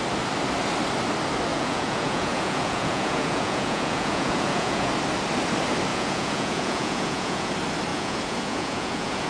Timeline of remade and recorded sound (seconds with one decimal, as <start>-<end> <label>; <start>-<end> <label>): 0.0-1.5 recorded; 1.5-4.9 remade; 4.9-5.9 recorded; 5.9-7.5 remade; 7.5-7.9 recorded; 7.9-9.3 remade